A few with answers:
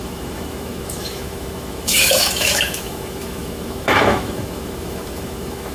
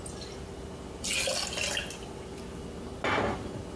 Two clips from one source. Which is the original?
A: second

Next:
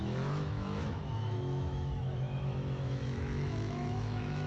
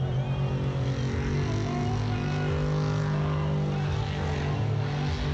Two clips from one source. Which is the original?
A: second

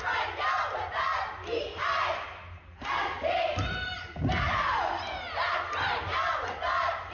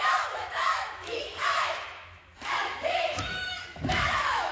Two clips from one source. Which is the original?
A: first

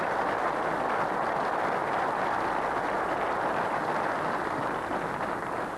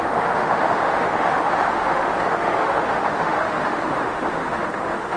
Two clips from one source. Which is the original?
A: first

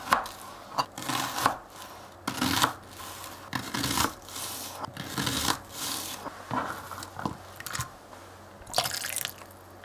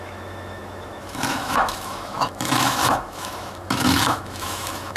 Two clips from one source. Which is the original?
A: first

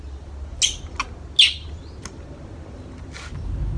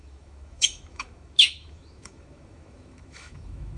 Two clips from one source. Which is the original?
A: first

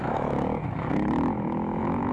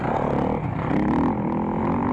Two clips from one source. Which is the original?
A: second